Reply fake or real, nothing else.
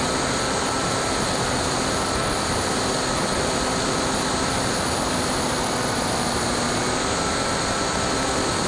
real